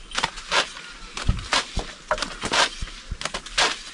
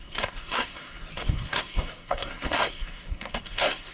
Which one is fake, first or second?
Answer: second